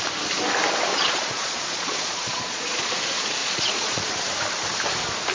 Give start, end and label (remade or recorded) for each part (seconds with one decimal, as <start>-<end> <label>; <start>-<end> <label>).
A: 0.0-0.9 recorded; 0.9-2.9 remade; 2.9-3.4 recorded; 3.4-4.1 remade; 4.1-5.3 recorded